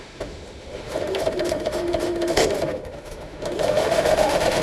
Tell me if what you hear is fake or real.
fake